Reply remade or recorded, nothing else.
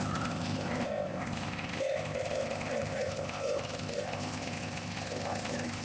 remade